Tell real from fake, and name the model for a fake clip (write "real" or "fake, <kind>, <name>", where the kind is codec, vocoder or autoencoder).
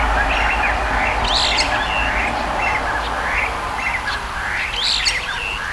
real